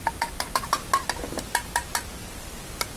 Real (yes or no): yes